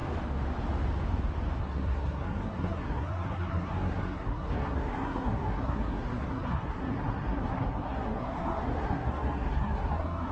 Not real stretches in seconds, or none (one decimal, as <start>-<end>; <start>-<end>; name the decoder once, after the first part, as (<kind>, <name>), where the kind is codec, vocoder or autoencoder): 1.6-10.3 (codec, SNAC)